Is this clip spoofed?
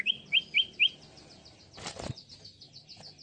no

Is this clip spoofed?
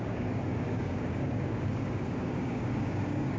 yes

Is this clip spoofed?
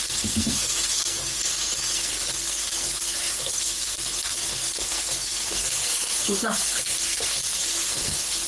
yes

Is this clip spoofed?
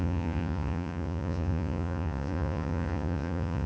yes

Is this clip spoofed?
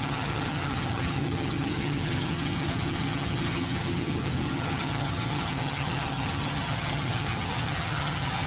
yes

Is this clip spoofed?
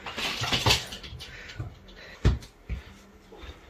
yes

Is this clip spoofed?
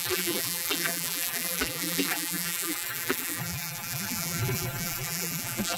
yes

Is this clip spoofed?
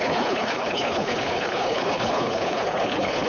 yes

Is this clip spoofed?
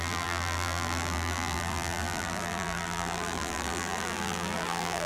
yes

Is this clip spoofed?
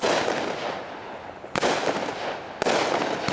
no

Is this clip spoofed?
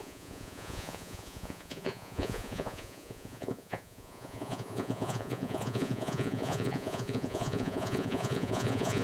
yes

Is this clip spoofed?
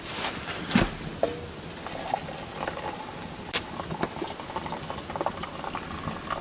no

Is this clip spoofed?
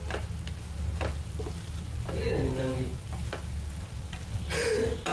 no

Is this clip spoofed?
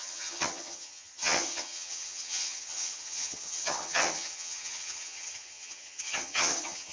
yes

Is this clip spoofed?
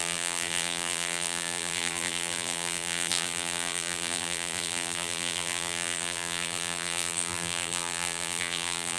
yes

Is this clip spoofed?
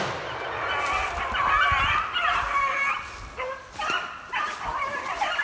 no